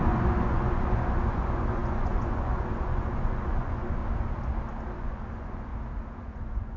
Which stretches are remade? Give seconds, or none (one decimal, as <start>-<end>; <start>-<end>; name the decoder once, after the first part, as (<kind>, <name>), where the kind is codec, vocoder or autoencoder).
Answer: 0.0-4.0 (vocoder, Vocos); 5.0-5.7; 6.2-6.8